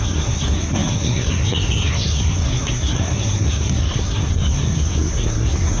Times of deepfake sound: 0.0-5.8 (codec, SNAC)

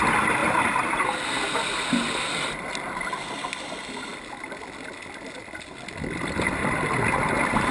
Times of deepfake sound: none

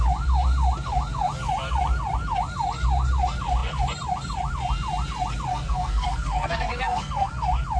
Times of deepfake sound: 5.5-7.3 (codec, SNAC)

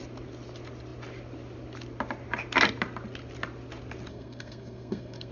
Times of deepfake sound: 4.1-5.3 (codec, SNAC)